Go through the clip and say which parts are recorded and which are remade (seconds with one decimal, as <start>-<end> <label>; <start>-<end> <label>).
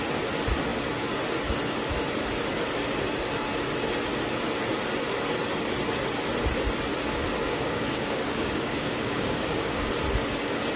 0.0-7.4 recorded; 7.4-9.9 remade; 9.9-10.8 recorded